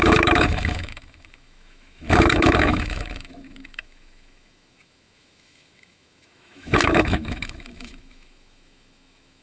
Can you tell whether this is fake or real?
fake